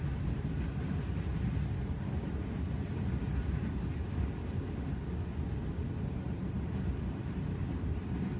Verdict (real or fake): real